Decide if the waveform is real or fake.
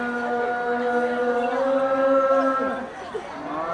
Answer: real